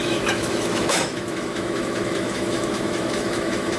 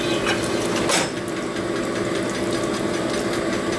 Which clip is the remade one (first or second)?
first